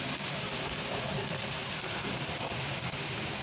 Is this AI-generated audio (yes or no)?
no